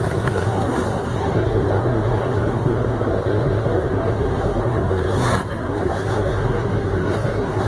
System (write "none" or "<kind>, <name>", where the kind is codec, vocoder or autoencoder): codec, SNAC